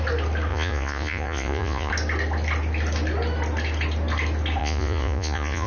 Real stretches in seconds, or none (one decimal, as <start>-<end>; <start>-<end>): 0.0-0.5; 1.9-4.6